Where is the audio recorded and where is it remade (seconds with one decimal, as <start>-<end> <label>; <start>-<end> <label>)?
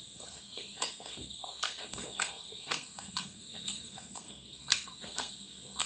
0.0-5.9 remade